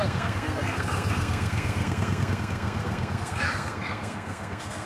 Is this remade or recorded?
remade